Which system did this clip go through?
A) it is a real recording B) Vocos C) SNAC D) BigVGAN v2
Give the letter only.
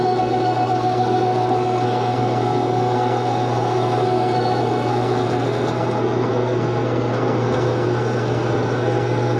C